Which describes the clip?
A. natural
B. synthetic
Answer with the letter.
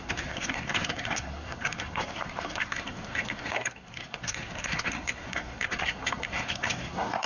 B